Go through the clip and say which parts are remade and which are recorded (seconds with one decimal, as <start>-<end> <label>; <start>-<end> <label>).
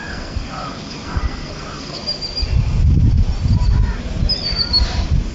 0.0-2.0 remade; 2.0-5.3 recorded